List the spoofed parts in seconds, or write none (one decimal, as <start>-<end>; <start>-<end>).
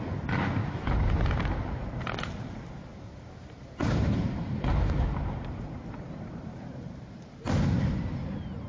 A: 0.6-2.3; 2.9-7.1